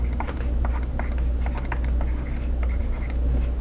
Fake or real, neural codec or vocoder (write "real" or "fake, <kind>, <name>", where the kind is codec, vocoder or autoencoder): real